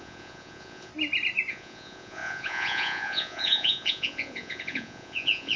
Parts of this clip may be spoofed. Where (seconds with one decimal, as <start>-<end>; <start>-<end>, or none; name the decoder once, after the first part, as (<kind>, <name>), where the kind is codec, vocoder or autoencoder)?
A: 0.0-0.9 (vocoder, Vocos); 1.5-5.6